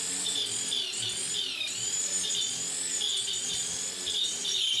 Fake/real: real